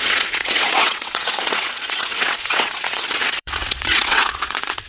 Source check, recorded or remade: remade